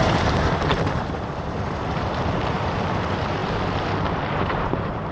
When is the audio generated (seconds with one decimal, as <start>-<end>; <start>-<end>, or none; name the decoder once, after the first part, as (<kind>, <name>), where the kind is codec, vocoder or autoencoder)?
0.0-5.1 (vocoder, BigVGAN v2)